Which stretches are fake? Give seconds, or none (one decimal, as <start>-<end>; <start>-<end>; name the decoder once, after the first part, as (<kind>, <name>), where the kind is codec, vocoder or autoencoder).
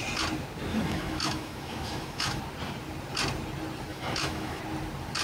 0.7-2.4 (autoencoder, DAC-VAE); 3.9-4.6